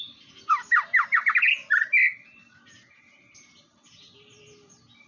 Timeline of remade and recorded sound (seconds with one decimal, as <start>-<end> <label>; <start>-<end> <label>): 0.0-5.1 recorded